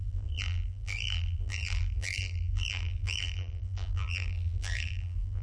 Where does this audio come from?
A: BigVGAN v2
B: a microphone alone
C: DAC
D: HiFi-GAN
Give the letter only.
A